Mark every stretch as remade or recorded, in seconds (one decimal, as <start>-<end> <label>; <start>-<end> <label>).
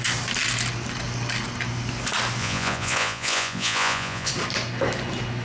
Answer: 0.0-2.4 recorded; 2.4-4.3 remade; 4.3-5.4 recorded